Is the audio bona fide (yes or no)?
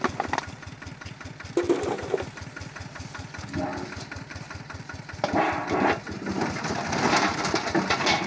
yes